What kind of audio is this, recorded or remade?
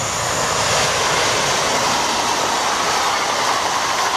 recorded